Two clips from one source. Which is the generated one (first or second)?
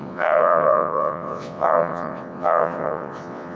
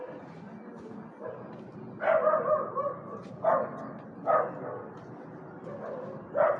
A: first